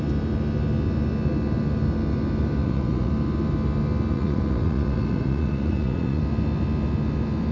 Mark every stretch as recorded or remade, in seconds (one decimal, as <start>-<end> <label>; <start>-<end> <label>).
0.0-2.6 recorded; 2.6-3.1 remade; 3.1-4.1 recorded; 4.1-6.2 remade; 6.2-7.5 recorded

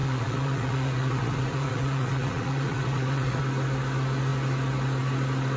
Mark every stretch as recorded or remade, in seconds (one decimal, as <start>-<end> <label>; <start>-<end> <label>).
0.0-3.4 remade; 3.4-5.6 recorded

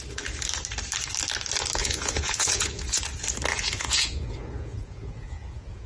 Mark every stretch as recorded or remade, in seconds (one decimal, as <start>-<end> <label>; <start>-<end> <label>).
0.0-1.8 recorded; 1.8-3.0 remade; 3.0-3.5 recorded; 3.5-5.9 remade

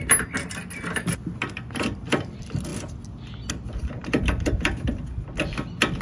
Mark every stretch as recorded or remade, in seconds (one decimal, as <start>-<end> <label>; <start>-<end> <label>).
0.0-6.0 recorded

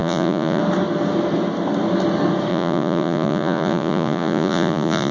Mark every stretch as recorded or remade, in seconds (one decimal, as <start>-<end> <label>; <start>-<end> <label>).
0.0-0.6 remade; 0.6-2.5 recorded; 2.5-5.1 remade

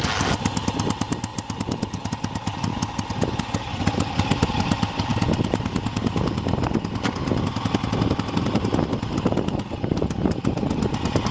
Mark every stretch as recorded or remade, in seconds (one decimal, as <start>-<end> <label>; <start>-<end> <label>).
0.0-11.3 recorded

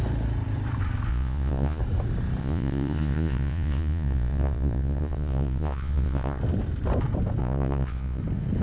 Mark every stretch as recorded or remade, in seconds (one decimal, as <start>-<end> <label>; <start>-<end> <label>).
0.0-1.1 recorded; 1.1-1.8 remade; 1.8-2.4 recorded; 2.4-6.4 remade; 6.4-7.4 recorded; 7.4-8.2 remade; 8.2-8.6 recorded

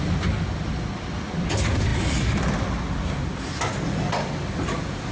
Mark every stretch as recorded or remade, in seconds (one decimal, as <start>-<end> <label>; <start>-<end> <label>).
0.0-5.1 recorded